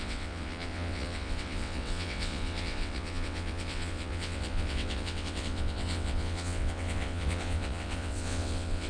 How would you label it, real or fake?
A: fake